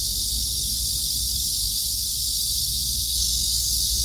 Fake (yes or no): no